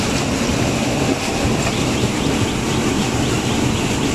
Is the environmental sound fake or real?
fake